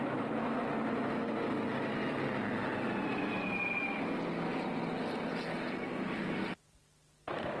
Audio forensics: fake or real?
real